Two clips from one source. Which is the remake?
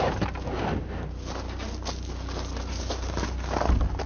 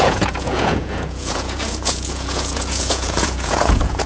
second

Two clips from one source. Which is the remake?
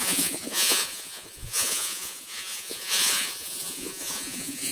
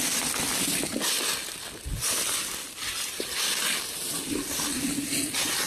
first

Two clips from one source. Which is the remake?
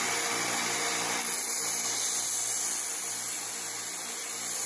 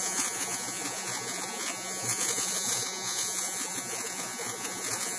second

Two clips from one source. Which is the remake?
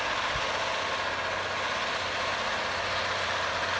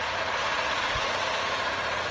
second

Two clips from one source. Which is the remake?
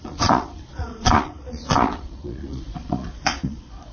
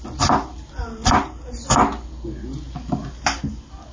first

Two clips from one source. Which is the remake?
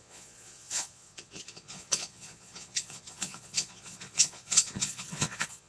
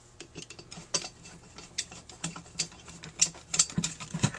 first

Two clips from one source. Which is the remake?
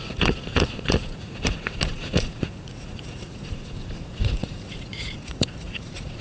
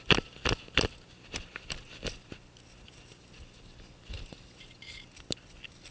first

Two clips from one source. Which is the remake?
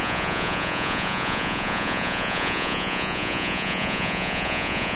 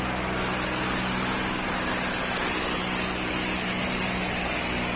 first